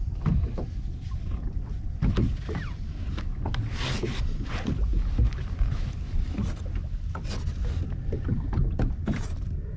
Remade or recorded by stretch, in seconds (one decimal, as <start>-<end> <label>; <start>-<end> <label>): 0.0-9.8 recorded